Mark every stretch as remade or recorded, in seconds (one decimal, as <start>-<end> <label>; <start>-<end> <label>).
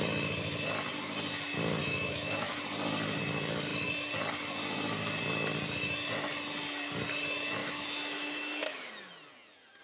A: 0.0-1.8 recorded; 1.8-2.6 remade; 2.6-7.6 recorded; 7.6-8.9 remade; 8.9-9.8 recorded